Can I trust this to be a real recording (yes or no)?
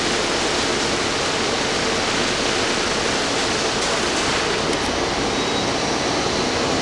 yes